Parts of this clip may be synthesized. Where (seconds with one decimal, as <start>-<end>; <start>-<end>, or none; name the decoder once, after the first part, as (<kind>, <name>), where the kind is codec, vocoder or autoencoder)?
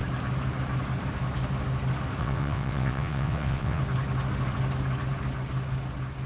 2.2-3.8 (vocoder, WaveNeXt)